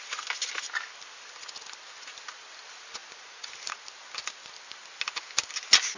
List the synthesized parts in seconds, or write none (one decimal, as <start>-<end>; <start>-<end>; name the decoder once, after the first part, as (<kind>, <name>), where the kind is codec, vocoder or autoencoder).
none